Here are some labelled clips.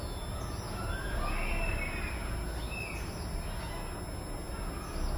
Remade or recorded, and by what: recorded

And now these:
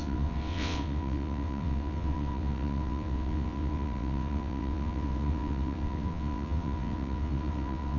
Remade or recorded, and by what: remade, vocoder, WaveNeXt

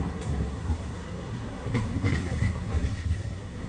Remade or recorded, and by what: remade, codec, SNAC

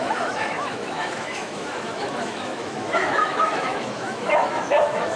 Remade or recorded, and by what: remade, autoencoder, DAC-VAE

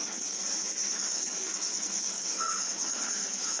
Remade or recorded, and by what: remade, codec, SNAC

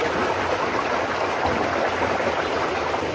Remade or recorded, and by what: recorded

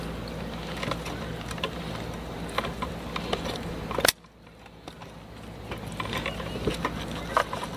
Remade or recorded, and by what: recorded